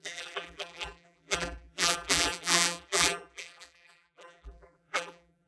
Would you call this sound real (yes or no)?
no